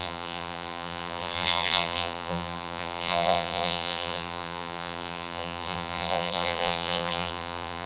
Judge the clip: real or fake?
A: fake